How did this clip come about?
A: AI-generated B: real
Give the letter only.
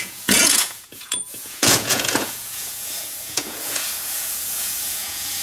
A